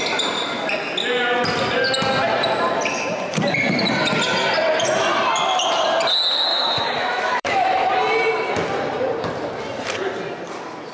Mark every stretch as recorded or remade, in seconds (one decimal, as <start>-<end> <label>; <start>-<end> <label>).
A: 0.0-6.5 recorded; 6.5-7.9 remade; 7.9-10.9 recorded